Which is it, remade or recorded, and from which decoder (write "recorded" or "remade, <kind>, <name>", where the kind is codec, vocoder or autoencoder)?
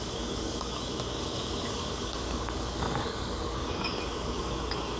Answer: remade, codec, DAC